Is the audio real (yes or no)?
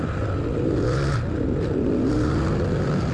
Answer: yes